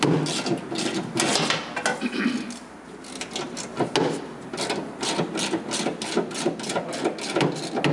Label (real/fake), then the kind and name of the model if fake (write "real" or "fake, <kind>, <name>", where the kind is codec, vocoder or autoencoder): real